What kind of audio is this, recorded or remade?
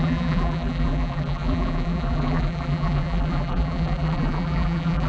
remade